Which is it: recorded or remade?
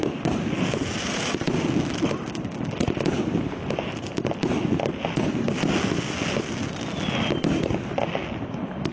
recorded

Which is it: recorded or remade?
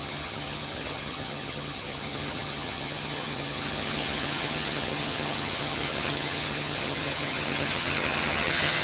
remade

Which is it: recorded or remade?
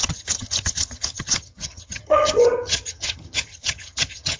remade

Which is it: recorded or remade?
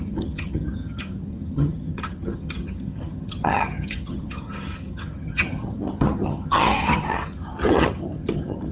remade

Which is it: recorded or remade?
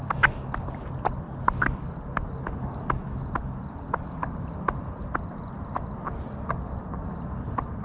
recorded